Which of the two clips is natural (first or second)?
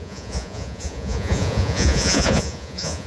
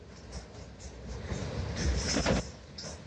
second